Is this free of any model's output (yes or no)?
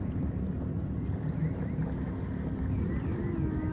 yes